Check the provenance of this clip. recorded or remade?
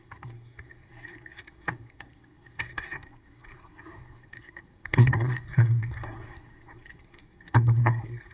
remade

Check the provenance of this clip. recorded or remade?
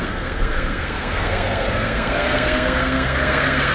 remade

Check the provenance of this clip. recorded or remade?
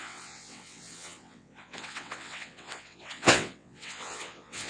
remade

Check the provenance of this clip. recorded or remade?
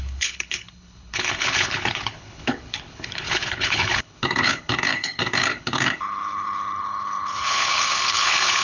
remade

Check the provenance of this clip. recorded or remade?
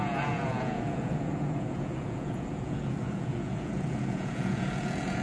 remade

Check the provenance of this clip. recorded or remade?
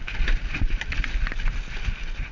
recorded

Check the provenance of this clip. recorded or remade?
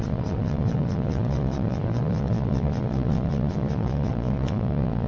remade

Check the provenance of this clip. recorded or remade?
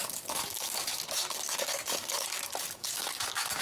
remade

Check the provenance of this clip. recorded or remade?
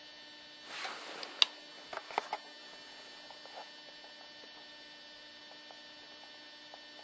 recorded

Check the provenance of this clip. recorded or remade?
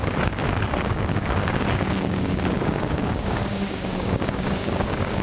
remade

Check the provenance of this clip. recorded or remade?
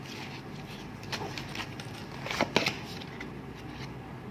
recorded